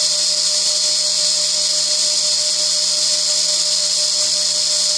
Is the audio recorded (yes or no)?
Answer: yes